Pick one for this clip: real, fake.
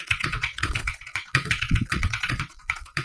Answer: fake